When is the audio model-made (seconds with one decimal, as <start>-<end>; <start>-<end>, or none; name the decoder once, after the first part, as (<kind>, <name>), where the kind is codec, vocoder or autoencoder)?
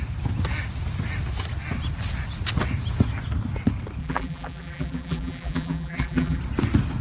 4.0-6.4 (vocoder, BigVGAN v2)